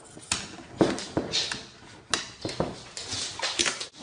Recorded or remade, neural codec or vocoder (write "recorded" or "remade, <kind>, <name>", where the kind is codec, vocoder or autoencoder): recorded